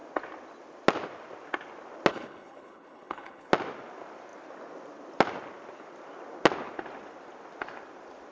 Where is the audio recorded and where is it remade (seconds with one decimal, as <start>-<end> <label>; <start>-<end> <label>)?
0.0-2.1 recorded; 2.1-3.5 remade; 3.5-8.3 recorded